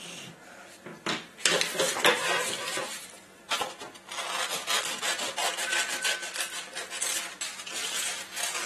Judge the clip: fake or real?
real